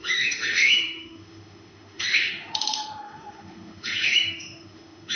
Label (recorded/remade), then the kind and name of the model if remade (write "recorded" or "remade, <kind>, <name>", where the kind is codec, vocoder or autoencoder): remade, autoencoder, DAC-VAE